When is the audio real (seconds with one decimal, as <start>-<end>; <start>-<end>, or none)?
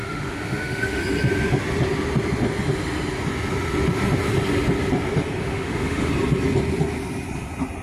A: 1.0-5.4; 6.1-7.8